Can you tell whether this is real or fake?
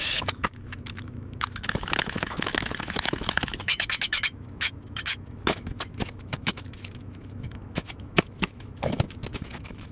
fake